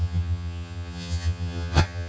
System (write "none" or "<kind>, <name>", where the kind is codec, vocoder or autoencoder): vocoder, HiFi-GAN